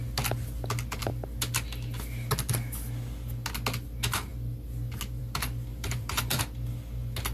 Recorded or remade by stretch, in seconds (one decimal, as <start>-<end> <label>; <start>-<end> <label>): 0.0-5.7 recorded; 5.7-6.4 remade; 6.4-7.3 recorded